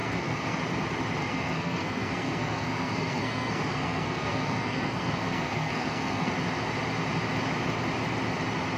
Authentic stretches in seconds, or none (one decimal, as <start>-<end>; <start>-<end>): 0.6-1.2; 6.3-8.8